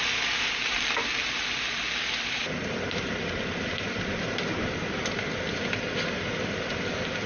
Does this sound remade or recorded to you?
recorded